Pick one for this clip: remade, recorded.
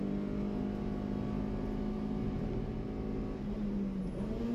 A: recorded